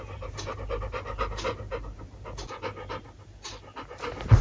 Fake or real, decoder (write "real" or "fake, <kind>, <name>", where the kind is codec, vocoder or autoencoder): real